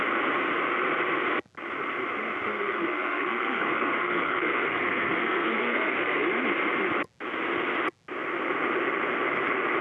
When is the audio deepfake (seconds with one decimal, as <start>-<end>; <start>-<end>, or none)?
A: 2.5-6.2